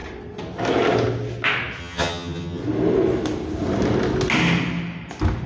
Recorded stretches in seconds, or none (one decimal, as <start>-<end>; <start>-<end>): 0.0-1.8; 2.6-5.5